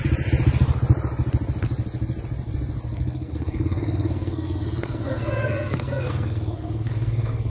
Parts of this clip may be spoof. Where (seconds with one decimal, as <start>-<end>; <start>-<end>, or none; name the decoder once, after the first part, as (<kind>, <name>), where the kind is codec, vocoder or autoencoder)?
2.9-7.5 (codec, SNAC)